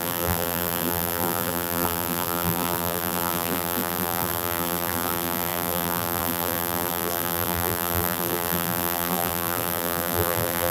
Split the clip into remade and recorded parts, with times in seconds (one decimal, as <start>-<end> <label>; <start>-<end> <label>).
0.0-10.7 remade